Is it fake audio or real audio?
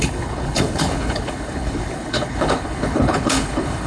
fake